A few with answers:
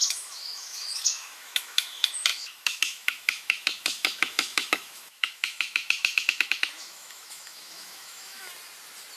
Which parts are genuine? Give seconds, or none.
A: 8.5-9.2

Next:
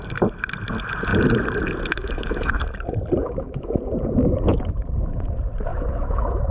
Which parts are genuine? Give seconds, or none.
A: 0.0-2.0; 2.6-3.2; 3.8-5.7

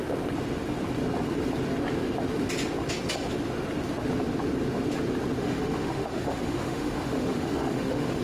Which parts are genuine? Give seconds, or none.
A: 0.0-5.4